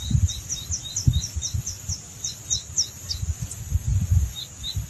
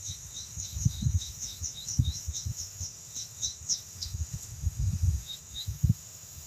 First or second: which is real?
first